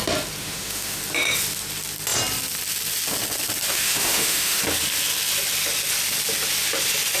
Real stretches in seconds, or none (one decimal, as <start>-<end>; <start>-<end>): 0.0-0.4; 1.0-3.7; 4.6-7.2